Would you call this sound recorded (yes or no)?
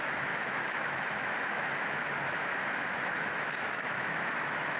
no